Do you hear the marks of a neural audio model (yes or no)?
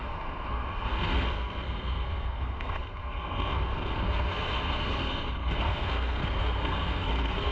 yes